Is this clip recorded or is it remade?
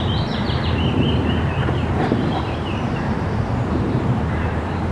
remade